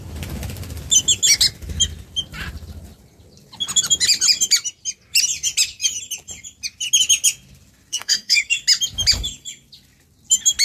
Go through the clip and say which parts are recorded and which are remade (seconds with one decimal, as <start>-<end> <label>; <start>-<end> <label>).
0.0-7.9 recorded; 7.9-8.6 remade; 8.6-10.6 recorded